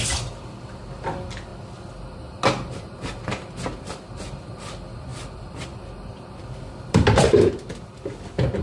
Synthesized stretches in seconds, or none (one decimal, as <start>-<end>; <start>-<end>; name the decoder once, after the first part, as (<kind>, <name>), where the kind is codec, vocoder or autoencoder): 5.1-7.5 (vocoder, BigVGAN v2)